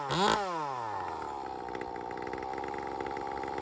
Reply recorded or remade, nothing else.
recorded